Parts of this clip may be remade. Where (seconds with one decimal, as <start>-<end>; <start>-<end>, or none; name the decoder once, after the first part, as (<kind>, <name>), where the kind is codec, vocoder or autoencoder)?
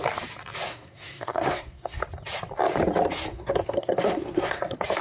0.7-2.0 (codec, SNAC); 3.3-4.6